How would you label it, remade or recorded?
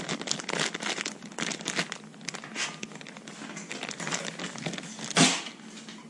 recorded